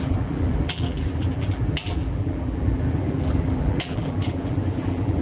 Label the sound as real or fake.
fake